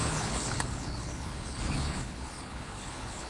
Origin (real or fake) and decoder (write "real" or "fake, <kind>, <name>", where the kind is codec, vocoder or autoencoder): fake, codec, HILCodec